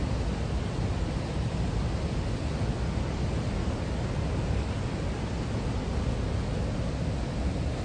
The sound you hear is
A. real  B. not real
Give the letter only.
A